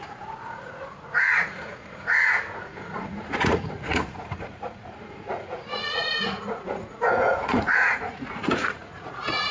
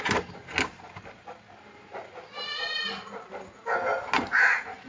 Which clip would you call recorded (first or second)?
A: second